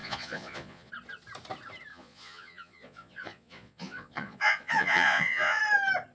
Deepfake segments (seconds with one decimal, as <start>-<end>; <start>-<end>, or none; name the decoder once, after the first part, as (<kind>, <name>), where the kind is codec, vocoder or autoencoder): 0.0-0.9 (vocoder, Vocos); 1.9-5.6